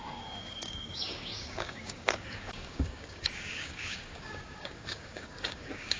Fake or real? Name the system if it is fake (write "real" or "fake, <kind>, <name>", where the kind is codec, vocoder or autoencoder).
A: fake, codec, DAC